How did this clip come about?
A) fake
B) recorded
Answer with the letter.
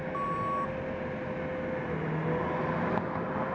B